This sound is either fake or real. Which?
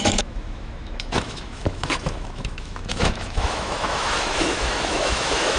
fake